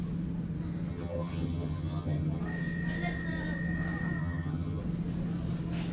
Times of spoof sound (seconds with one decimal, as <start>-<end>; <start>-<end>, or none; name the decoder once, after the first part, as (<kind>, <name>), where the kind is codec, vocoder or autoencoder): 0.9-2.4 (vocoder, HiFi-GAN); 4.2-4.8